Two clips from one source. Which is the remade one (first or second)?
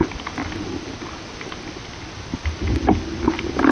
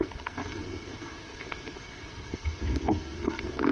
second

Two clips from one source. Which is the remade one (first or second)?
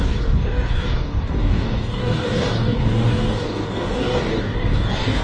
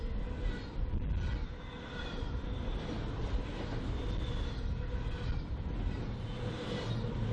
first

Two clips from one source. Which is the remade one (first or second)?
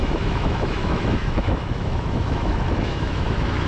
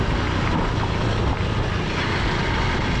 first